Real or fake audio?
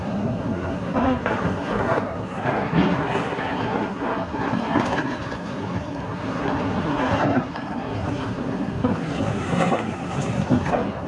fake